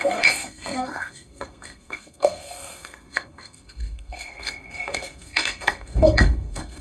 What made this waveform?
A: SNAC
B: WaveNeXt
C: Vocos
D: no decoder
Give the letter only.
A